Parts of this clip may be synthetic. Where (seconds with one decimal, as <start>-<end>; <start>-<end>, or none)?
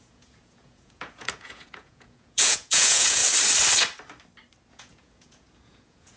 0.0-3.2; 4.7-6.2